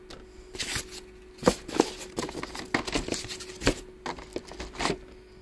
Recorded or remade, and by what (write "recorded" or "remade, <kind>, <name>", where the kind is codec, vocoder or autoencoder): recorded